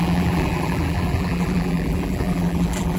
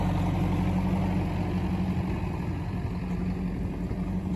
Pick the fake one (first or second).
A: first